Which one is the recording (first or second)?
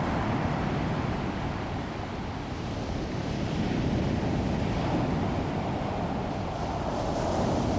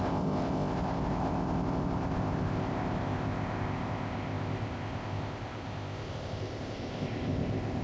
first